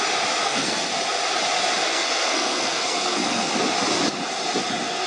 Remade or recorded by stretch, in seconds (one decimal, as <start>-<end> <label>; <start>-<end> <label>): 0.0-0.4 recorded; 0.4-0.9 remade; 0.9-1.9 recorded; 1.9-3.5 remade; 3.5-5.1 recorded